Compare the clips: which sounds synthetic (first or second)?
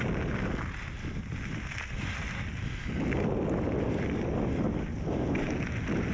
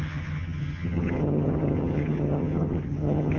second